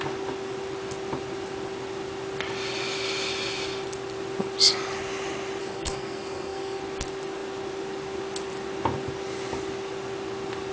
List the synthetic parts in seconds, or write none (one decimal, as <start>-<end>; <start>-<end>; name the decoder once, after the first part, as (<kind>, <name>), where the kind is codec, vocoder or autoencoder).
5.6-6.8 (codec, SNAC)